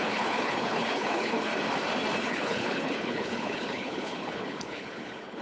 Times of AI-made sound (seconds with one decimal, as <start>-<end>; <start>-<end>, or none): 0.0-1.5; 2.2-5.4